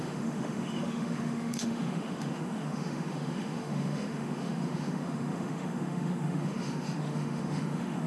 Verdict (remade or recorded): remade